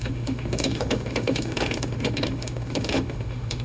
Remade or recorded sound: remade